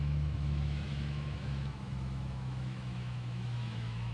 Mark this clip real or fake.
fake